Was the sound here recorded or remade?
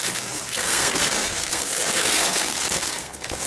remade